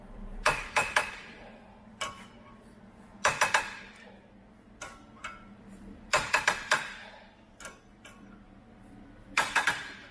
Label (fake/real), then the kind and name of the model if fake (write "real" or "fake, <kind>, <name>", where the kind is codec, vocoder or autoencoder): fake, vocoder, BigVGAN v2